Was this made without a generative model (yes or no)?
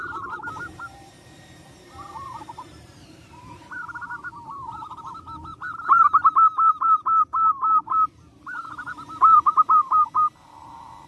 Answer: no